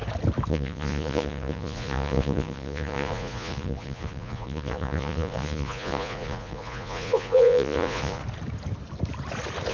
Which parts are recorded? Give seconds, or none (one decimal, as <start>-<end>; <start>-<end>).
0.0-0.5; 8.2-9.7

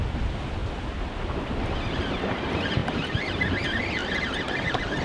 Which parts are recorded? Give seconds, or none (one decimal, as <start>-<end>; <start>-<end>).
0.0-0.6; 1.5-2.8; 3.5-4.0

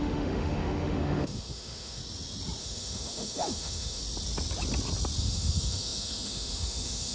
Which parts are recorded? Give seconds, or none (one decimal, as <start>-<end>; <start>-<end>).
2.0-2.6; 4.0-5.2

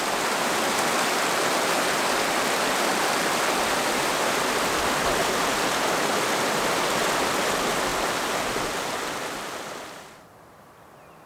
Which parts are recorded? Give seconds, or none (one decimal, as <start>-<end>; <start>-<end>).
0.0-11.3

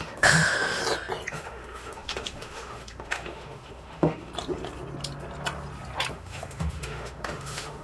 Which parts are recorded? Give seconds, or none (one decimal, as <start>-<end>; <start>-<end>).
0.8-1.3; 4.3-6.1

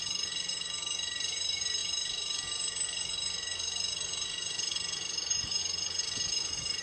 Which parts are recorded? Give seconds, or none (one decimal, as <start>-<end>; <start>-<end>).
none

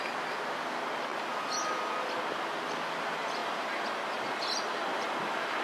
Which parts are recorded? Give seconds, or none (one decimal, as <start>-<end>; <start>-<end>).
0.0-5.6